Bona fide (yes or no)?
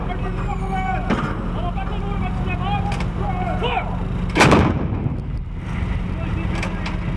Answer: yes